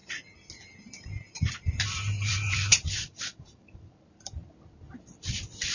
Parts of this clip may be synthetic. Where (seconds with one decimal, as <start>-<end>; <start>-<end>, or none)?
1.5-4.4